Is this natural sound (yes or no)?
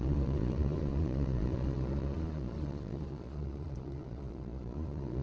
no